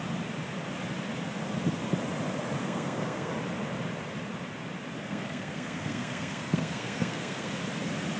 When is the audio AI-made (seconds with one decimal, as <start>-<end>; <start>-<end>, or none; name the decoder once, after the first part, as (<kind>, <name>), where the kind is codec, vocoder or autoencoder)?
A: 2.6-3.3 (codec, SNAC); 5.0-7.5